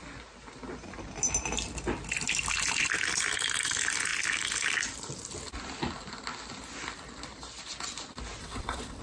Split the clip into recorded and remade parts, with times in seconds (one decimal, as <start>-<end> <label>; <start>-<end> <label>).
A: 0.0-8.4 recorded; 8.4-9.0 remade